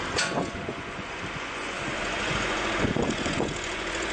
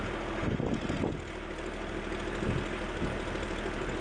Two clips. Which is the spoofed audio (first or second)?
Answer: first